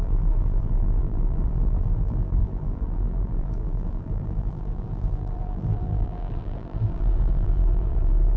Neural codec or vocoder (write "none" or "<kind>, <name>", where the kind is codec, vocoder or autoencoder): vocoder, BigVGAN v2